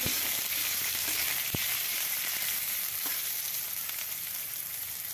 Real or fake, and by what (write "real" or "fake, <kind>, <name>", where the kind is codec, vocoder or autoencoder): fake, vocoder, BigVGAN v2